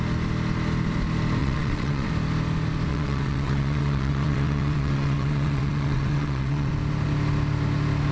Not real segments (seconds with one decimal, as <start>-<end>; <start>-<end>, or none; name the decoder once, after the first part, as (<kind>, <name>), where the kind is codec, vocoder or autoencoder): 1.4-2.1 (vocoder, WaveNeXt); 2.9-6.7